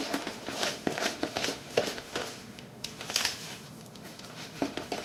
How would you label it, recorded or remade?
remade